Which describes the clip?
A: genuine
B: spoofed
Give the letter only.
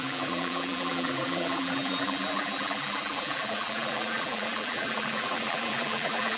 B